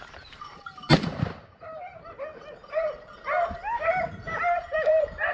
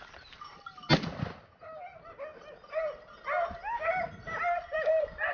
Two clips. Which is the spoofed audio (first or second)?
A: first